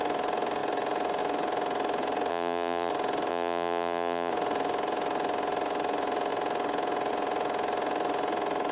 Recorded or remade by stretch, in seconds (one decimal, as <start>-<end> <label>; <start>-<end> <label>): 0.0-2.3 recorded; 2.3-2.9 remade; 2.9-3.3 recorded; 3.3-4.3 remade; 4.3-8.7 recorded